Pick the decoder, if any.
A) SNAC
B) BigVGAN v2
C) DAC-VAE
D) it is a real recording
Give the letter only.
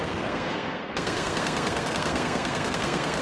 A